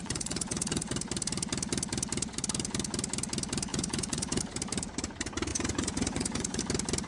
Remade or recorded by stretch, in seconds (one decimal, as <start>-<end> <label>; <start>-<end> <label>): 0.0-0.9 remade; 0.9-3.7 recorded; 3.7-4.4 remade; 4.4-5.5 recorded; 5.5-6.6 remade; 6.6-7.1 recorded